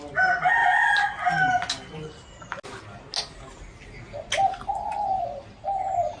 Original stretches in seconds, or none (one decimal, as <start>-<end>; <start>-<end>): 0.0-6.2